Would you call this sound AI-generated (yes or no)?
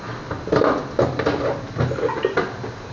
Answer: no